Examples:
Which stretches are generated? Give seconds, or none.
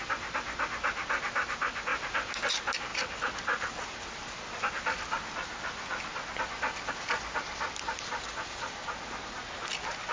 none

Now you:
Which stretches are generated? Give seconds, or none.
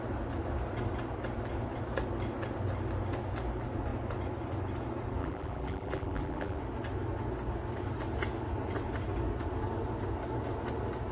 5.2-6.6 (vocoder, BigVGAN v2)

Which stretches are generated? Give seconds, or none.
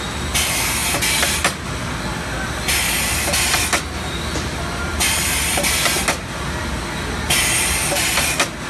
4.9-6.7 (vocoder, BigVGAN v2)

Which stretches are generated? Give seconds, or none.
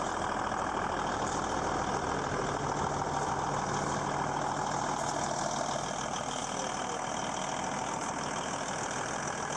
none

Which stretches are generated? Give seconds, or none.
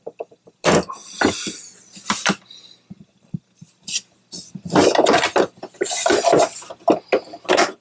none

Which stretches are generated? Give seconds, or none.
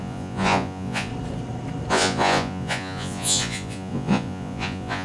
0.0-1.1 (vocoder, Vocos); 1.9-5.0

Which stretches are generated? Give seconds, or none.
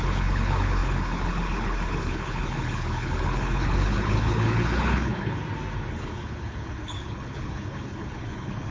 0.0-5.4 (codec, HILCodec); 5.9-8.7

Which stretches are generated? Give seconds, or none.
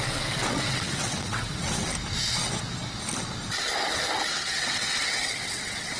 0.0-1.9 (vocoder, WaveNeXt); 4.3-6.0